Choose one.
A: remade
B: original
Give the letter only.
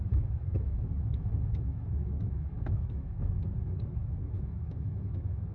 A